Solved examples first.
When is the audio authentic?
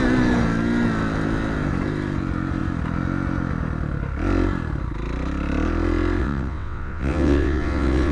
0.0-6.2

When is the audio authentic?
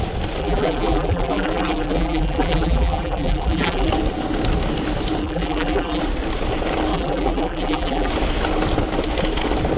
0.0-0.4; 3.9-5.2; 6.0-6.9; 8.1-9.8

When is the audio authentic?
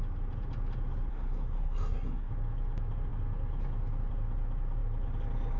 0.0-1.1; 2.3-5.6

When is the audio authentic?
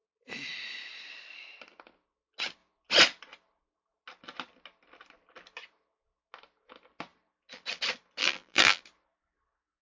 0.0-8.2; 8.8-9.8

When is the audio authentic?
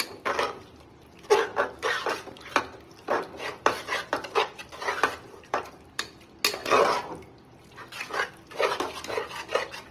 0.0-1.5; 2.6-3.5; 6.1-9.9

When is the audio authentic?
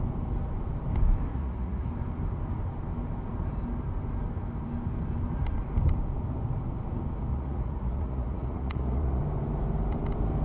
0.0-1.3; 1.9-7.3; 9.2-10.4